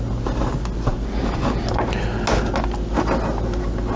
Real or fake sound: real